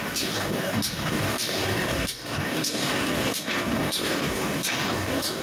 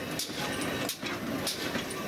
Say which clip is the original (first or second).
second